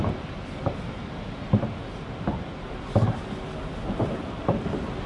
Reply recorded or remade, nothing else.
recorded